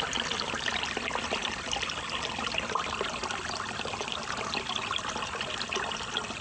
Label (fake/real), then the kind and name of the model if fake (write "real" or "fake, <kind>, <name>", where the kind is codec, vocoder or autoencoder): real